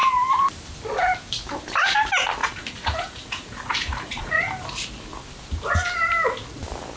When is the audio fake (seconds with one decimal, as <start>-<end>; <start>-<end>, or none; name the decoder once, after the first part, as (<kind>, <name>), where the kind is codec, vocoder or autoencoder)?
2.4-4.4 (vocoder, Vocos)